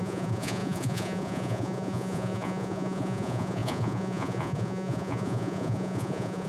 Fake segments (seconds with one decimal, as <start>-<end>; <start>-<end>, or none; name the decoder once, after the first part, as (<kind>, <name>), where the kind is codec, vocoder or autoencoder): 0.0-6.5 (vocoder, Vocos)